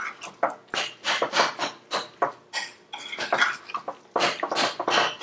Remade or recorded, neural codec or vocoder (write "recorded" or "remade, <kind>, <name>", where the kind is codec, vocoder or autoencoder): recorded